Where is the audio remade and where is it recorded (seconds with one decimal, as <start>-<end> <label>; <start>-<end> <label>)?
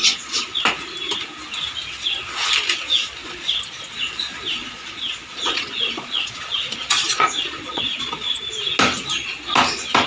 0.0-0.6 remade; 0.6-3.2 recorded; 3.2-4.0 remade; 4.0-4.6 recorded; 4.6-8.4 remade; 8.4-10.1 recorded